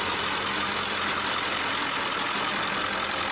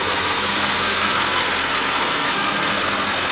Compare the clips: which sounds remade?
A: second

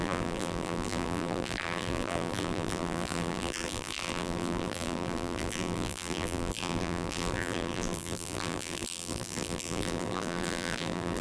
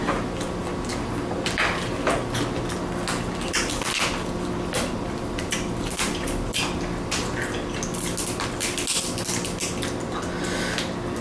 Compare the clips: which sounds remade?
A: first